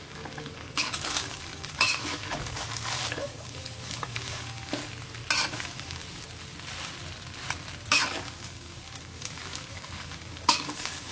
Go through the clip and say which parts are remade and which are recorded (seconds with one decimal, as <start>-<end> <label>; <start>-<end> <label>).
0.0-4.8 remade; 4.8-5.5 recorded; 5.5-6.0 remade; 6.0-7.9 recorded; 7.9-11.1 remade